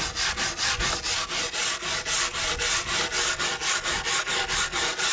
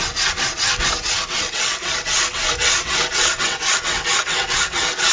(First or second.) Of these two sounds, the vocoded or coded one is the second